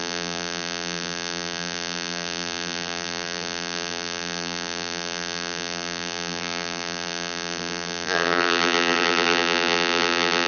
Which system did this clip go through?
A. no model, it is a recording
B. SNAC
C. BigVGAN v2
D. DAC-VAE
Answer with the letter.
C